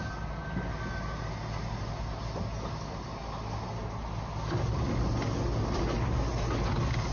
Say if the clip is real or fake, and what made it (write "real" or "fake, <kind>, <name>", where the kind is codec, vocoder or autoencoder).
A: real